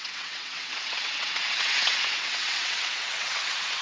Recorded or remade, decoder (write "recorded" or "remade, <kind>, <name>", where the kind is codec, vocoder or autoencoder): remade, vocoder, WaveNeXt